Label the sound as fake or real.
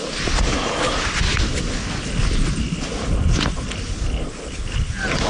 real